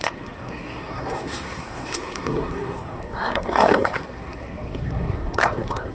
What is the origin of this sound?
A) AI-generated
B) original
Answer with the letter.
A